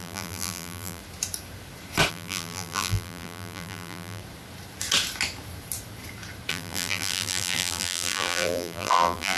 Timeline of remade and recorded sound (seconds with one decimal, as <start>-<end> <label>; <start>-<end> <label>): 0.0-1.0 remade; 1.0-2.1 recorded; 2.1-4.2 remade; 4.2-6.5 recorded; 6.5-9.4 remade